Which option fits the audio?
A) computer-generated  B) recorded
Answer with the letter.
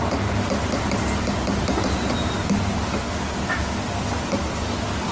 B